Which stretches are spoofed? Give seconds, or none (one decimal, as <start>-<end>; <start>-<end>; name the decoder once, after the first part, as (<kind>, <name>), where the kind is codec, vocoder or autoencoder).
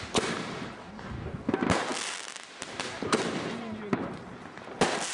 0.8-1.5 (codec, DAC)